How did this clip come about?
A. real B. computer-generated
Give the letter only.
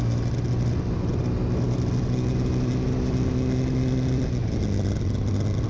A